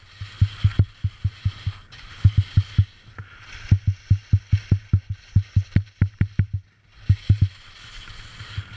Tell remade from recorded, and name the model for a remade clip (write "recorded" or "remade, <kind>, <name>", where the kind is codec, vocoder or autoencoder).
recorded